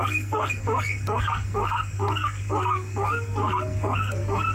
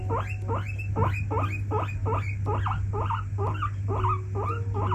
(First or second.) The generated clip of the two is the first